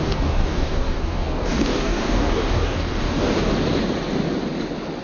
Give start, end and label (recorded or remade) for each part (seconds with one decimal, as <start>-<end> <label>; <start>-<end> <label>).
0.0-3.5 remade; 3.5-5.0 recorded